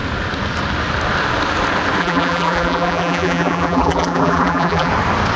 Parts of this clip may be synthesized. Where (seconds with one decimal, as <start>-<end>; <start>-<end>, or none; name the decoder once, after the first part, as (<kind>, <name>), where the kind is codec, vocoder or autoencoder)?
2.0-4.9 (vocoder, BigVGAN v2)